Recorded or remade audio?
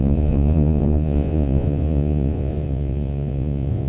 remade